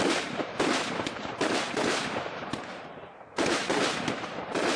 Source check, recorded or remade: remade